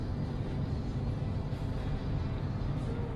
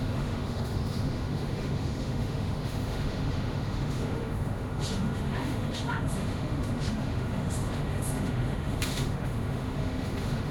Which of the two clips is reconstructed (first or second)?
second